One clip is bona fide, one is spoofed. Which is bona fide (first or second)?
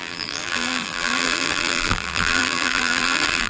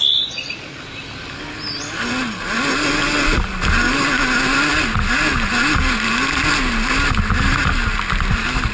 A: second